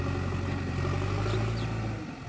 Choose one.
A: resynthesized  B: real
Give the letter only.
B